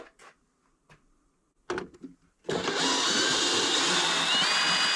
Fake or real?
real